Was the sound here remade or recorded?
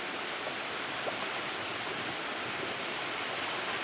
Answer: recorded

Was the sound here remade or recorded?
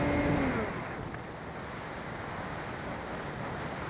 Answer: recorded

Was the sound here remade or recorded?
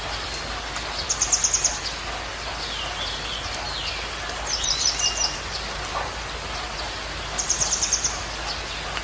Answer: recorded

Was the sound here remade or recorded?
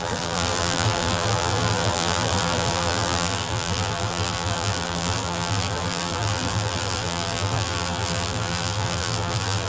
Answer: remade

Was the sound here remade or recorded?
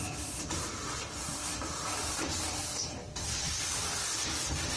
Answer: recorded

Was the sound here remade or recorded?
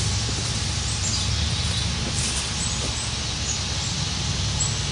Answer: recorded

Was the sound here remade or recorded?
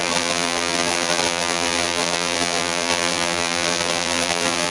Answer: remade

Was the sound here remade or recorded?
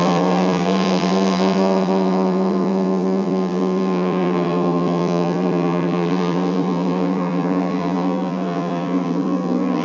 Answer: remade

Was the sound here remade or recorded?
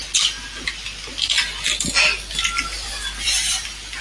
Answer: remade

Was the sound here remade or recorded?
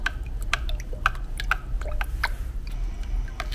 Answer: recorded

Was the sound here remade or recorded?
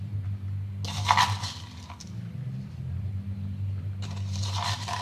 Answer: recorded